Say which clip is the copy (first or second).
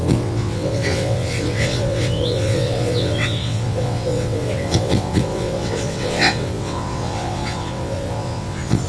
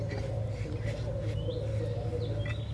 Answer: first